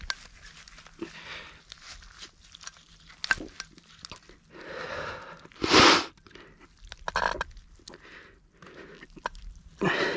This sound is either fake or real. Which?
real